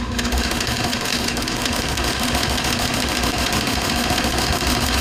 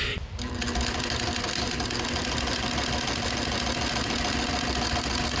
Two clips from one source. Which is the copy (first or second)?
first